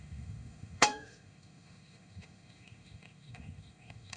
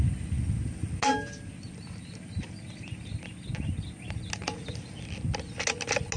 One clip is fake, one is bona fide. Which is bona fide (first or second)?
second